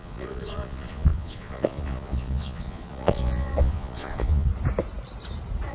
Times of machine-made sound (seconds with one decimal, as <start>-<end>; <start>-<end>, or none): 0.0-4.5